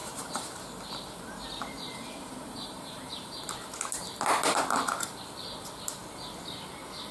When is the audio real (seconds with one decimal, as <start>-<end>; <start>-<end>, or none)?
0.6-1.9; 3.4-7.1